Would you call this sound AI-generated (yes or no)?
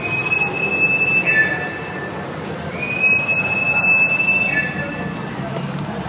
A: no